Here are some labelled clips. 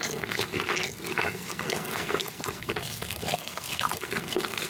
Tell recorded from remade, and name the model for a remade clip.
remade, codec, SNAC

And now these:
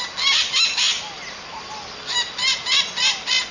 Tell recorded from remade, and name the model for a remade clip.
recorded